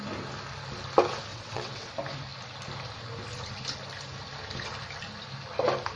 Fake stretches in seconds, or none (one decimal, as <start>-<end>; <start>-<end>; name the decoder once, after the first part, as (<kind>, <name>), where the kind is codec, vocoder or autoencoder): 1.3-1.9 (vocoder, WaveNeXt)